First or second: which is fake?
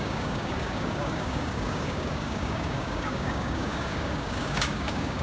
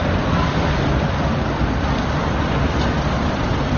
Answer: first